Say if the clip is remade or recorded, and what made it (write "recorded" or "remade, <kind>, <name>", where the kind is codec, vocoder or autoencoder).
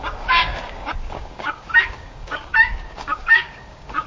remade, codec, DAC